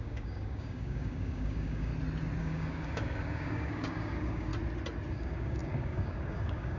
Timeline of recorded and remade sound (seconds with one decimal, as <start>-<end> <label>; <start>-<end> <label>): 0.0-1.9 remade; 1.9-2.4 recorded; 2.4-4.5 remade; 4.5-5.1 recorded; 5.1-6.8 remade